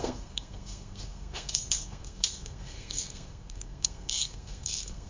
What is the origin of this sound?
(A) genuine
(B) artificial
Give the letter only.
B